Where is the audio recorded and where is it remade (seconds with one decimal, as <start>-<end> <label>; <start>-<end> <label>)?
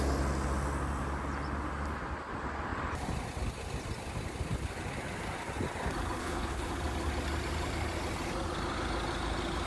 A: 0.0-6.2 recorded; 6.2-6.7 remade; 6.7-9.7 recorded